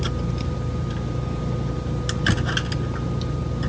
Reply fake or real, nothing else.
real